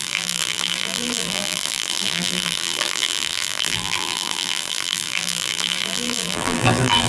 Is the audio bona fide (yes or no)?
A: no